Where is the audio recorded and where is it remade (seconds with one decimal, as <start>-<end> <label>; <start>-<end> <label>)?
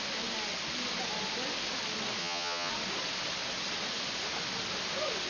0.0-2.2 recorded; 2.2-2.7 remade; 2.7-5.3 recorded